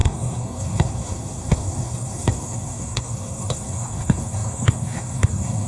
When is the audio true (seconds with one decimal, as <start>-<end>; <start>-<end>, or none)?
none